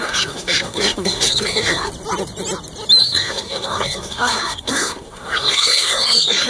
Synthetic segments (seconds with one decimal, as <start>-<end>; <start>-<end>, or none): 0.0-1.9; 3.0-6.5

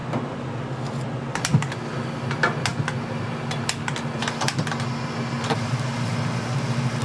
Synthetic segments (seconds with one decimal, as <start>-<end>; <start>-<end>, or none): none